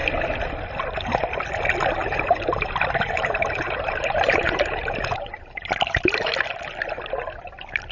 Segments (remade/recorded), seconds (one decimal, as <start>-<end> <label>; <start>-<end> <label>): 0.0-2.0 recorded; 2.0-6.3 remade; 6.3-7.9 recorded